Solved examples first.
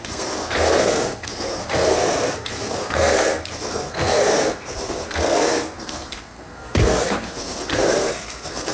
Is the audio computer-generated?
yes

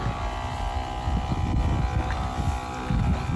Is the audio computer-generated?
no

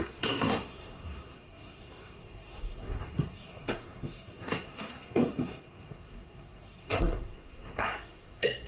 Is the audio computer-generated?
yes